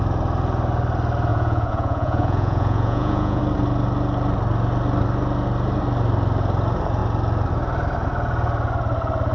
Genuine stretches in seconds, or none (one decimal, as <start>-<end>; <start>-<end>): 0.0-1.3; 3.4-9.3